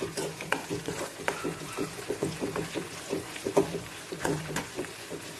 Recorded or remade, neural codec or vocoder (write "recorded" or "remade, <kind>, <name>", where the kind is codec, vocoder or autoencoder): remade, vocoder, Vocos